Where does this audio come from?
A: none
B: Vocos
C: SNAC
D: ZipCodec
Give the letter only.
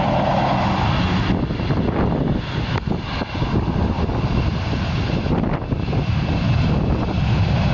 A